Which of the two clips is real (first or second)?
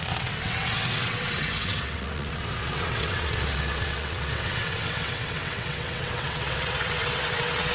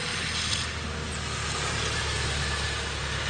second